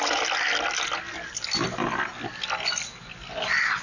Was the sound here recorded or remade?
recorded